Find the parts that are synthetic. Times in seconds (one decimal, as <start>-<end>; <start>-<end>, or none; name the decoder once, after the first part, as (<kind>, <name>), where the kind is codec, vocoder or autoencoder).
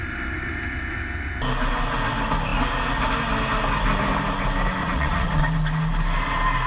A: 4.8-5.4 (vocoder, Vocos)